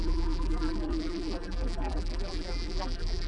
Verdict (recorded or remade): remade